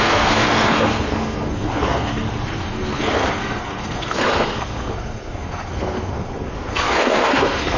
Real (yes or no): no